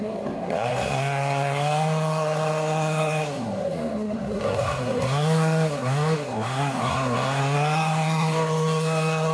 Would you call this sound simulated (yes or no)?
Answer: yes